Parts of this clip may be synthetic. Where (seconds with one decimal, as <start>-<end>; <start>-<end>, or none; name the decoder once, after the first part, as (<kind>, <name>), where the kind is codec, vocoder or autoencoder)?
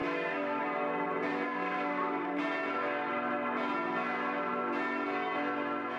0.0-0.6 (codec, SNAC); 1.3-2.4